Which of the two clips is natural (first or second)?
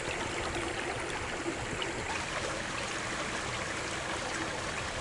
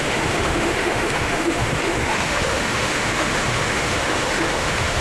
first